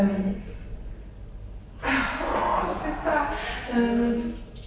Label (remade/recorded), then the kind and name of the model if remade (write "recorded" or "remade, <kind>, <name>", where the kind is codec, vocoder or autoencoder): recorded